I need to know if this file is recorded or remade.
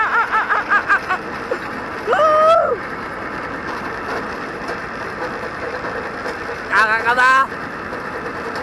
recorded